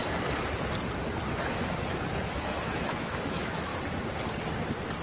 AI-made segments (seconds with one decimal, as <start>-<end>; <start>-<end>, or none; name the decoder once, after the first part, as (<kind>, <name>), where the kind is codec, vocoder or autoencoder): 1.4-3.7 (autoencoder, DAC-VAE)